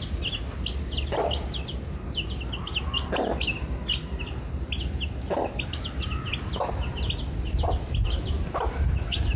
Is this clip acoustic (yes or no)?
yes